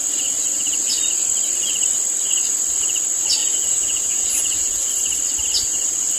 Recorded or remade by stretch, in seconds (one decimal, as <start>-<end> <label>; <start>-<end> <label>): 0.0-3.4 recorded; 3.4-4.9 remade; 4.9-6.2 recorded